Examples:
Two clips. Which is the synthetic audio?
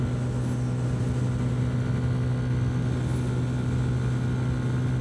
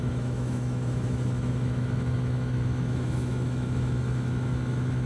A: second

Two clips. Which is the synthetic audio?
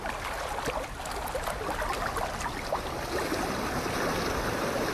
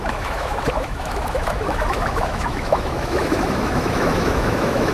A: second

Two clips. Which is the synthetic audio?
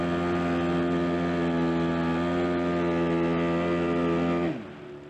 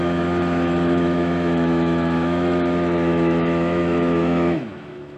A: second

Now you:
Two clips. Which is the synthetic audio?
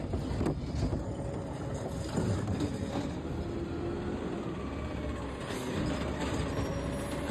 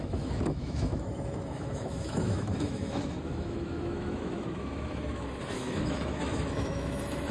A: second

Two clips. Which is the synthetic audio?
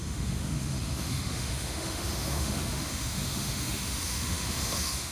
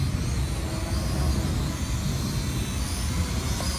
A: first